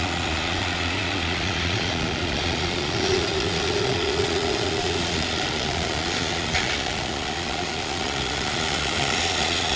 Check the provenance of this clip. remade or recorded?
remade